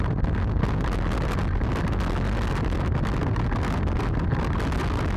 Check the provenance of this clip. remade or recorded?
recorded